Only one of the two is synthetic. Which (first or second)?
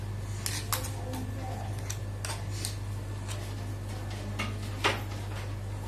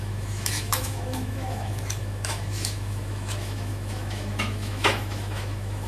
second